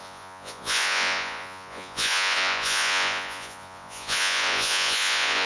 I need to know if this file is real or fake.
fake